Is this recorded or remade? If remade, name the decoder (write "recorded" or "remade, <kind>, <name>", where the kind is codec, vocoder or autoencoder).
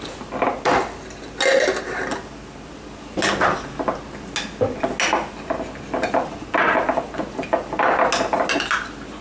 recorded